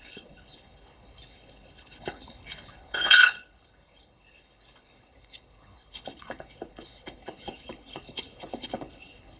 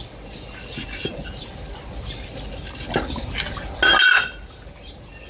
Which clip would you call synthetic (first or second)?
first